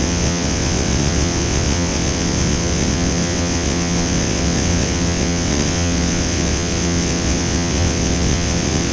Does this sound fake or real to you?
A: fake